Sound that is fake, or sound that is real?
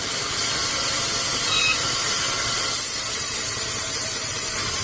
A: real